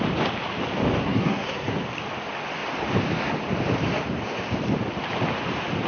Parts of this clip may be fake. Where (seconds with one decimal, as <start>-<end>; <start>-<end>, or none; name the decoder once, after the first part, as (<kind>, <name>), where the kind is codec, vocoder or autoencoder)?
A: 1.0-1.8 (codec, SNAC)